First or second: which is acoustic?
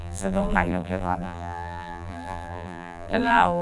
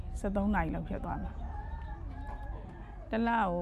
second